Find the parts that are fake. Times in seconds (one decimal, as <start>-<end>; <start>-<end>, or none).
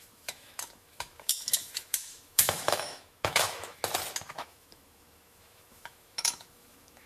0.0-3.8; 4.3-7.1